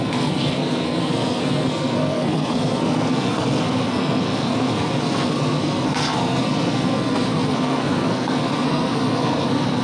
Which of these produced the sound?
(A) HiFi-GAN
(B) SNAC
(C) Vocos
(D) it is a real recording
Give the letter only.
B